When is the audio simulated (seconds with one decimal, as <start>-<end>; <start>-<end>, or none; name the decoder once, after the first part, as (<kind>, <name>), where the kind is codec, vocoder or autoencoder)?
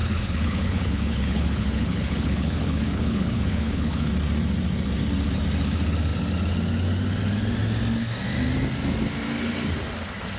0.0-4.1 (codec, HILCodec)